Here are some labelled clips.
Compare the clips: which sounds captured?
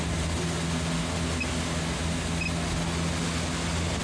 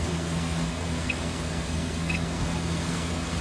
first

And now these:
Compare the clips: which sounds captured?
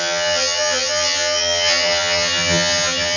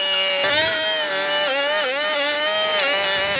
second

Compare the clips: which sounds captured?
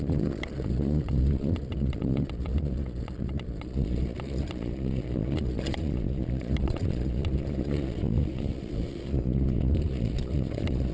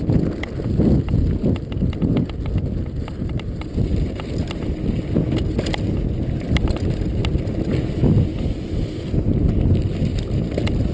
second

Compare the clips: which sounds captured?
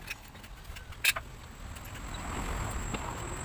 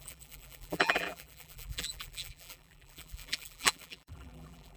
first